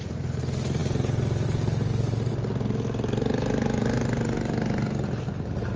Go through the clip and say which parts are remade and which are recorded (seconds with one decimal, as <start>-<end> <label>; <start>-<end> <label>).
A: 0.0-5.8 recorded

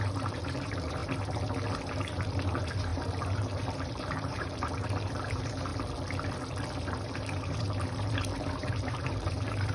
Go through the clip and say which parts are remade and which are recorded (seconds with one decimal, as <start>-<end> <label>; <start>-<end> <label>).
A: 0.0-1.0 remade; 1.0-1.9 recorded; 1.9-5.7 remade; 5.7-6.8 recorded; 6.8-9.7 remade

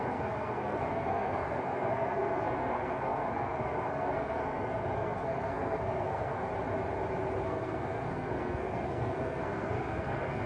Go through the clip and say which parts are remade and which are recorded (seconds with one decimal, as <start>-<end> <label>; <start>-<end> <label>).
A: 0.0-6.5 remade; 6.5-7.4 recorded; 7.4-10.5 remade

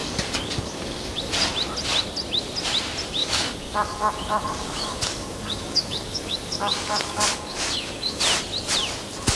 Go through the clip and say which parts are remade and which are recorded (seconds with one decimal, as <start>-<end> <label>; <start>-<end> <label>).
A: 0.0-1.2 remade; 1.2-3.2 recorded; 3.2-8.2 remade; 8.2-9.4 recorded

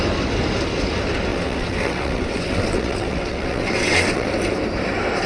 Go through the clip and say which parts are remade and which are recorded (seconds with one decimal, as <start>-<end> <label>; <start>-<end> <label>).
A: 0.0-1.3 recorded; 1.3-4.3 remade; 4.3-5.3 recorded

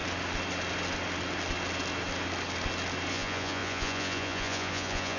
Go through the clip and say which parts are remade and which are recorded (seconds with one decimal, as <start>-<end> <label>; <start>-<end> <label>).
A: 0.0-3.1 recorded; 3.1-5.2 remade